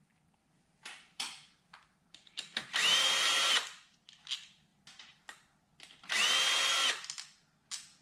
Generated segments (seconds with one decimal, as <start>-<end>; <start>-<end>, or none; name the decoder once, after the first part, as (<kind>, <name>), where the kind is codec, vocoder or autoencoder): 0.4-3.1 (vocoder, BigVGAN v2)